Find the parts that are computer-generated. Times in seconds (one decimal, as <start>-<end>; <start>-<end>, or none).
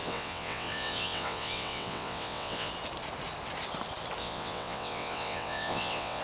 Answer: 0.0-2.7; 4.2-6.2